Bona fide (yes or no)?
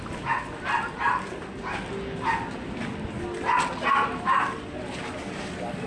yes